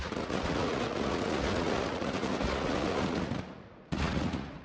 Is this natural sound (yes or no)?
no